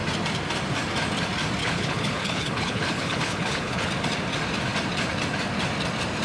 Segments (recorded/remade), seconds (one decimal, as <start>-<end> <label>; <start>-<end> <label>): 0.0-1.6 recorded; 1.6-3.9 remade; 3.9-6.2 recorded